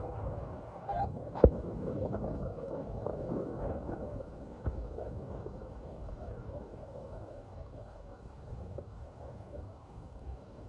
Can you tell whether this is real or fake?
fake